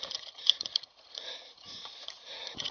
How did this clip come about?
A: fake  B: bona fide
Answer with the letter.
A